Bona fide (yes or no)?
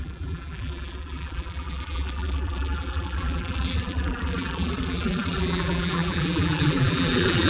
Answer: no